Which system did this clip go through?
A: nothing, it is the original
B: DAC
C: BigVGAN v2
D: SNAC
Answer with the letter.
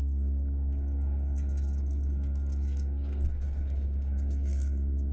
D